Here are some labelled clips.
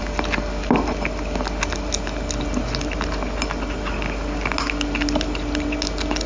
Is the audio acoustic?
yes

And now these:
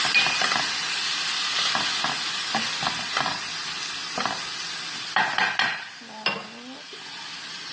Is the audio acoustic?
yes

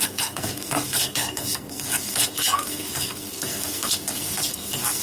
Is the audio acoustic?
no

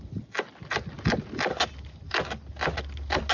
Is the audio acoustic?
yes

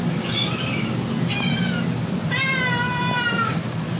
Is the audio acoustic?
yes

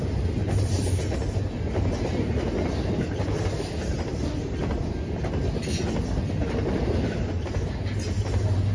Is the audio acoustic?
yes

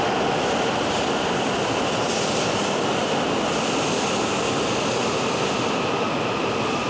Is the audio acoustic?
yes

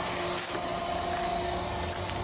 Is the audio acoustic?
yes